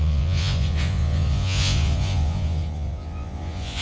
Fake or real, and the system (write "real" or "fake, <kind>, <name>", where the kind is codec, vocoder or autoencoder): fake, vocoder, Vocos